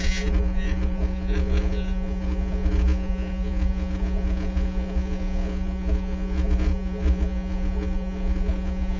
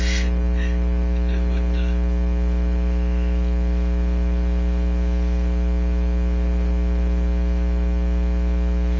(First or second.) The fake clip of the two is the first